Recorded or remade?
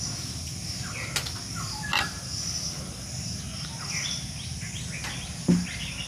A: recorded